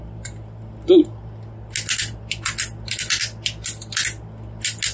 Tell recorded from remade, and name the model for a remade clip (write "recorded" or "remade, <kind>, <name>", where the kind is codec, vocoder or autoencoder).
recorded